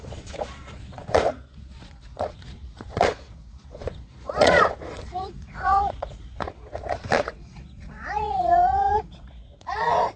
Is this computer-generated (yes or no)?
yes